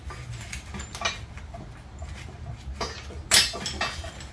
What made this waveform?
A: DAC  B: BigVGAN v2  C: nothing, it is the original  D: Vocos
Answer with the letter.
C